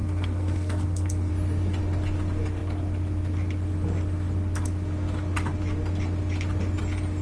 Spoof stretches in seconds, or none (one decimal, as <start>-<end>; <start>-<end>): 0.0-1.3